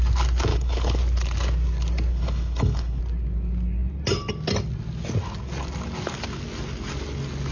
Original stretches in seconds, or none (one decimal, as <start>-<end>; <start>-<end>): 0.0-0.5; 1.0-2.1; 3.0-7.5